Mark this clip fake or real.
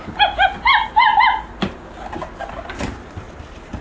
real